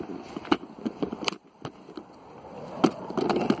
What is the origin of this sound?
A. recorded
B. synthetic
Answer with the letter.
A